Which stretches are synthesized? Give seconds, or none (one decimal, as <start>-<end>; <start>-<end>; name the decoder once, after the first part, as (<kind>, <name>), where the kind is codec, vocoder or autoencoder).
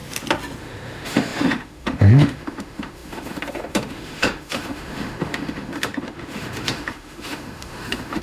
0.6-8.2 (autoencoder, DAC-VAE)